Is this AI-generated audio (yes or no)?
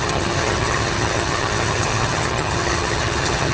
yes